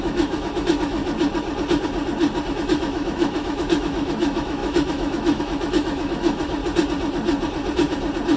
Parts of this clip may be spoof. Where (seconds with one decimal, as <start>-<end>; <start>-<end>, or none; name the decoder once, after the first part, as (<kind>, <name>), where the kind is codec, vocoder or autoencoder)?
0.0-1.0 (autoencoder, DAC-VAE); 2.5-6.6